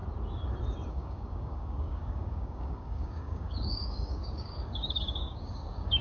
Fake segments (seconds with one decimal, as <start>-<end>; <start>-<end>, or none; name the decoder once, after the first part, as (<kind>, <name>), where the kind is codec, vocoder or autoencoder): 0.9-6.0 (codec, DAC)